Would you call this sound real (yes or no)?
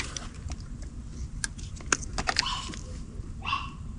yes